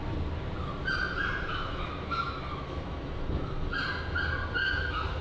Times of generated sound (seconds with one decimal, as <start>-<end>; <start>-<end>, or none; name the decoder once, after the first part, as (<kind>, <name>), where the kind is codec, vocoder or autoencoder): 1.5-3.7 (autoencoder, DAC-VAE); 4.6-5.2